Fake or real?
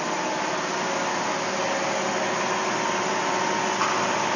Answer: real